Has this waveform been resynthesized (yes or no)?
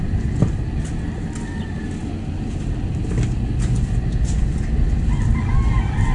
no